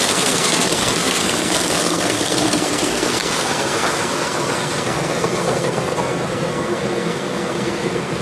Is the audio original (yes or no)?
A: no